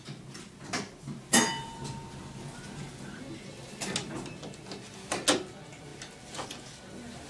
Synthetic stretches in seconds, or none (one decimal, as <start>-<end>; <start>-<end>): none